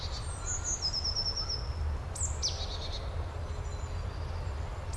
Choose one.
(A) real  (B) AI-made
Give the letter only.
A